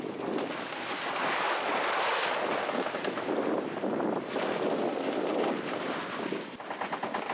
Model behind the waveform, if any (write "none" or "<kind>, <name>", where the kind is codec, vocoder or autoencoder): none